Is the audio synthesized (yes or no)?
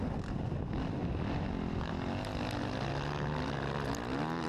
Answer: no